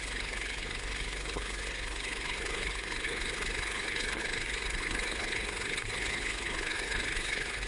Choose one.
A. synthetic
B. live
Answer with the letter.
A